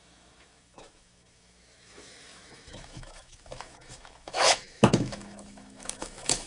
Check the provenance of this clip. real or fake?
fake